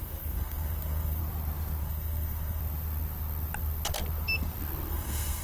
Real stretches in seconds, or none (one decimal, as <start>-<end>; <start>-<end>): 1.2-1.8; 2.6-4.9